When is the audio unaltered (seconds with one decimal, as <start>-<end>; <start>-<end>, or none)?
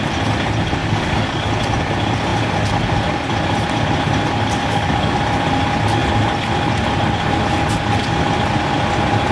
0.0-0.8; 1.5-4.6; 5.2-9.3